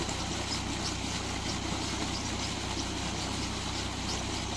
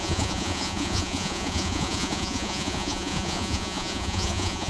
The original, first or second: first